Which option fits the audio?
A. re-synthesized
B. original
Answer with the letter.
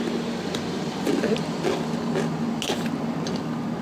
B